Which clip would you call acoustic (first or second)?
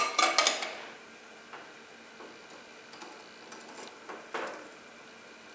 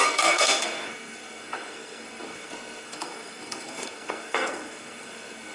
first